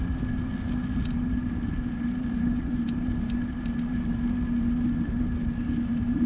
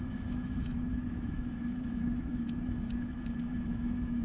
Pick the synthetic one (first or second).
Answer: second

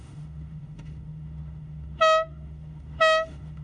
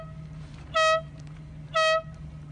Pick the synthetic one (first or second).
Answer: first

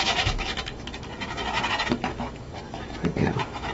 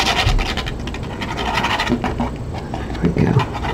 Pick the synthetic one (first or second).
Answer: first